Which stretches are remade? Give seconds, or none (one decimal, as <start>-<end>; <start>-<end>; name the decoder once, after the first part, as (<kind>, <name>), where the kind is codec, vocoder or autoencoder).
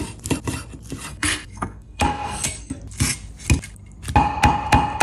1.1-2.8 (codec, SNAC)